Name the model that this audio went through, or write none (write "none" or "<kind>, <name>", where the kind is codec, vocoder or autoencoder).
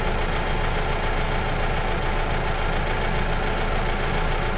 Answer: none